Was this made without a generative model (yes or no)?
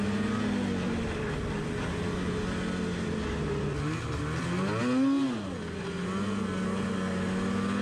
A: yes